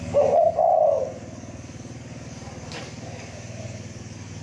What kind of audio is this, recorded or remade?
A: remade